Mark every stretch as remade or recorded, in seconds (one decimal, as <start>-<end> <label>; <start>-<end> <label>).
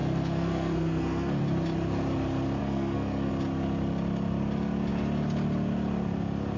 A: 0.0-1.4 remade; 1.4-2.6 recorded; 2.6-3.3 remade; 3.3-6.6 recorded